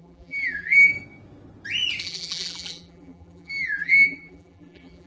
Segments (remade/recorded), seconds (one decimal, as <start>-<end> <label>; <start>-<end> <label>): 0.0-0.9 remade; 0.9-2.0 recorded; 2.0-5.1 remade